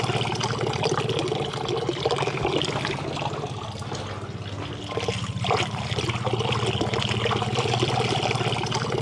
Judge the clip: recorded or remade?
remade